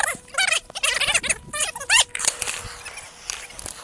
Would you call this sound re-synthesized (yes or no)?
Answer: no